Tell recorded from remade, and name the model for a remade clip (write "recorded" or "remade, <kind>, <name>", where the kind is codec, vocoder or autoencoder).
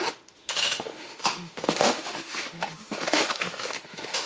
remade, autoencoder, DAC-VAE